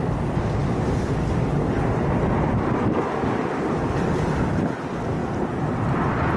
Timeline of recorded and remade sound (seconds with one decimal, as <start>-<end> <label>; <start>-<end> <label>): 0.0-6.4 recorded

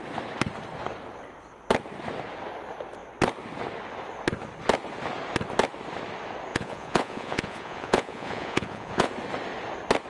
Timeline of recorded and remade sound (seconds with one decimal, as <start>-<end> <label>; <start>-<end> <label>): 0.0-6.5 recorded; 6.5-9.1 remade; 9.1-10.1 recorded

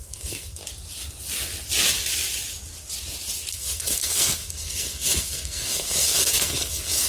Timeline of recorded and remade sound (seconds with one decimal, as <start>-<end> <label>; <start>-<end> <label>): 0.0-0.6 remade; 0.6-3.5 recorded; 3.5-7.1 remade

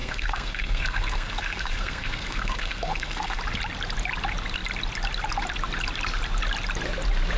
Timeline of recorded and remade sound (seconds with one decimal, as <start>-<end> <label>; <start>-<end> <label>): 0.0-3.4 remade; 3.4-7.4 recorded

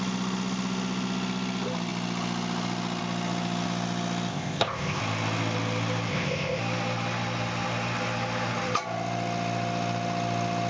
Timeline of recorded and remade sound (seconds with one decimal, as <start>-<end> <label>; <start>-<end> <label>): 0.0-4.3 recorded; 4.3-5.0 remade; 5.0-6.1 recorded; 6.1-6.6 remade; 6.6-10.7 recorded